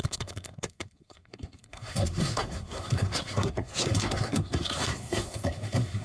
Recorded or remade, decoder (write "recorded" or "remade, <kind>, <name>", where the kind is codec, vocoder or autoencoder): remade, codec, SNAC